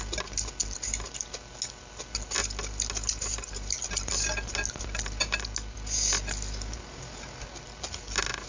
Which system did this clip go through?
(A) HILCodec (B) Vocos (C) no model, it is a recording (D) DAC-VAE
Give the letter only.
C